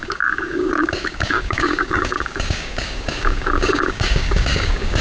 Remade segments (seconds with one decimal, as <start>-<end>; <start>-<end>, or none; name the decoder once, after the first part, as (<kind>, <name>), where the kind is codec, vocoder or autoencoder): 0.0-5.0 (codec, DAC)